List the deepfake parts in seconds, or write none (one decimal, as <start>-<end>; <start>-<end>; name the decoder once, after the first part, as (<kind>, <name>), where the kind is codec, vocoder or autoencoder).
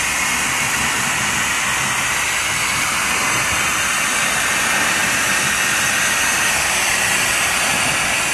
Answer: none